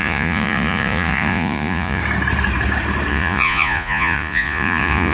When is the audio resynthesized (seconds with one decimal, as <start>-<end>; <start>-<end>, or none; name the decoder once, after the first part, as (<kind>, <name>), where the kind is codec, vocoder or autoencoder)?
0.0-2.0 (vocoder, Vocos); 3.1-5.1